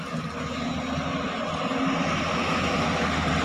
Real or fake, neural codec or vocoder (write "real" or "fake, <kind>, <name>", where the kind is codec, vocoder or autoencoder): real